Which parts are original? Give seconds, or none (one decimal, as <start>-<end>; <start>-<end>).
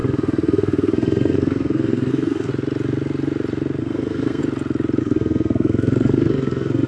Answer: 2.5-3.8; 4.4-5.0